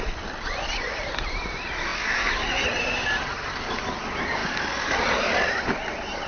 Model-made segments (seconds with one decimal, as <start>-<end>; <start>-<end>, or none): none